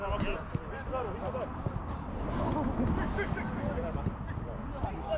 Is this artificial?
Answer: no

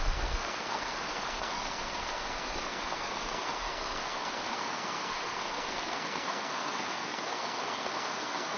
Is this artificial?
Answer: yes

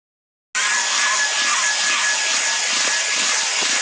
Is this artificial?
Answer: no